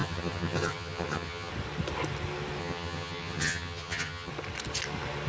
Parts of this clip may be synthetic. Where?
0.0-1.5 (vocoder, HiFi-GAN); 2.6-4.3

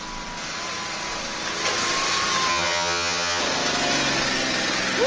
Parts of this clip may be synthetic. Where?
2.5-3.4 (vocoder, HiFi-GAN)

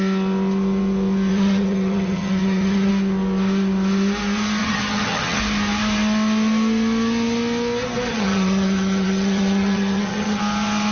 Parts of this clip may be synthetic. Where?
1.3-2.9 (vocoder, HiFi-GAN); 4.6-5.4; 8.1-10.4

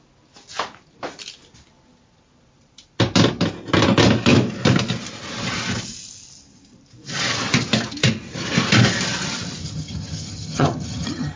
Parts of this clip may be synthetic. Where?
9.6-11.4 (vocoder, HiFi-GAN)

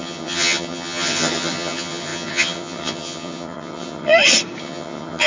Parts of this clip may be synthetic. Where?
0.0-4.1 (vocoder, HiFi-GAN); 4.6-5.3

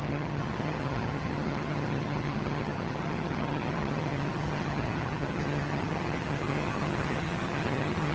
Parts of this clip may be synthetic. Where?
0.0-8.1 (vocoder, HiFi-GAN)

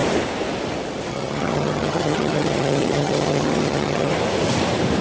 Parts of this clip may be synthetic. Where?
1.1-4.1 (vocoder, HiFi-GAN)